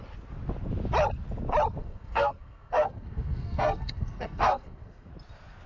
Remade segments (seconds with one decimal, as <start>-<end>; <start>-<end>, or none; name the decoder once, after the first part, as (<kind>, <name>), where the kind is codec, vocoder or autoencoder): 1.8-5.1 (codec, SNAC)